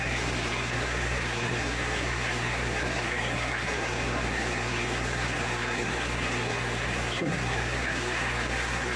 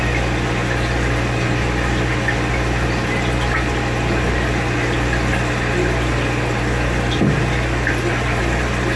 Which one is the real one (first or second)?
second